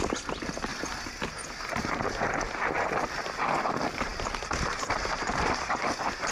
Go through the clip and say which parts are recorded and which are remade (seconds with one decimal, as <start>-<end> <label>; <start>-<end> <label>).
0.0-6.3 recorded